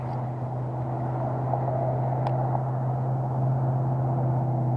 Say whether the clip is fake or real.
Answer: real